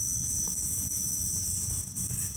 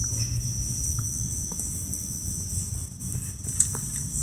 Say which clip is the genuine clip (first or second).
second